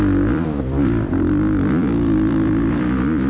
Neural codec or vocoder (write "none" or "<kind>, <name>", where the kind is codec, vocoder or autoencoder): vocoder, BigVGAN v2